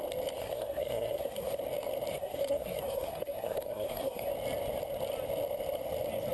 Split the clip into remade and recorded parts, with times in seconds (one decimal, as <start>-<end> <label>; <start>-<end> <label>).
0.0-0.4 recorded; 0.4-1.6 remade; 1.6-2.1 recorded; 2.1-4.3 remade; 4.3-6.3 recorded